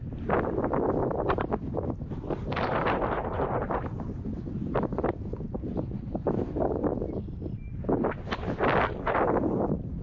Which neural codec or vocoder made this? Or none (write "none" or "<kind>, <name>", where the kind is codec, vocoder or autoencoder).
none